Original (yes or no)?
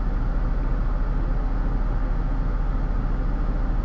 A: yes